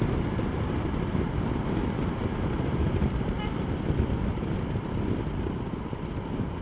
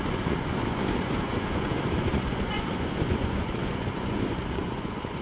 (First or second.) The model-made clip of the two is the second